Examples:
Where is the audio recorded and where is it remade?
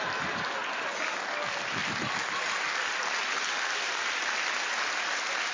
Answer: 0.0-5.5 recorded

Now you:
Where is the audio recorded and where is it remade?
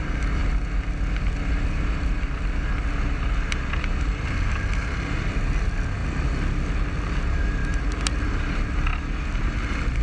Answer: 0.0-10.0 recorded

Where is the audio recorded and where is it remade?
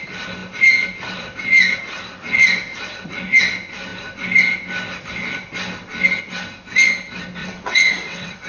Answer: 0.0-7.4 recorded; 7.4-8.5 remade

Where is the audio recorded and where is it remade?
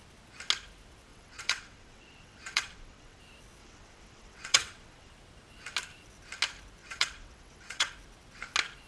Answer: 0.0-1.1 recorded; 1.1-3.2 remade; 3.2-3.6 recorded; 3.6-5.1 remade; 5.1-6.8 recorded; 6.8-7.9 remade; 7.9-8.9 recorded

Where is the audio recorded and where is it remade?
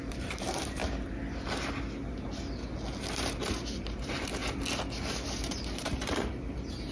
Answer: 0.0-0.8 remade; 0.8-3.3 recorded; 3.3-4.4 remade; 4.4-5.1 recorded; 5.1-6.9 remade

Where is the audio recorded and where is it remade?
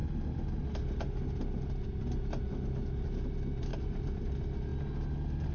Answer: 0.0-3.7 recorded; 3.7-4.2 remade; 4.2-5.5 recorded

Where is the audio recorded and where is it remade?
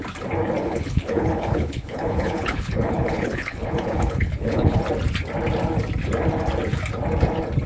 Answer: 0.0-0.6 recorded; 0.6-4.8 remade; 4.8-7.7 recorded